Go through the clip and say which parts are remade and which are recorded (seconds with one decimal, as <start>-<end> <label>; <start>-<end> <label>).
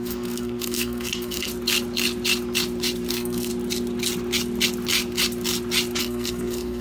0.0-1.5 remade; 1.5-3.1 recorded; 3.1-3.5 remade; 3.5-6.0 recorded; 6.0-6.8 remade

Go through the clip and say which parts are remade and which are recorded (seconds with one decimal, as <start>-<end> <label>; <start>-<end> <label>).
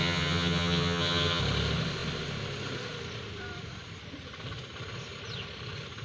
0.0-1.4 remade; 1.4-6.0 recorded